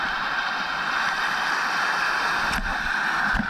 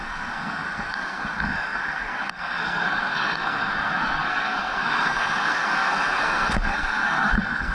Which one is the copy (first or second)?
second